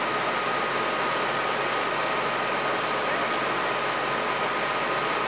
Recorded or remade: recorded